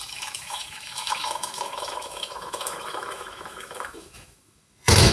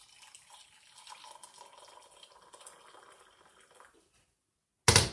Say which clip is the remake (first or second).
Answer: first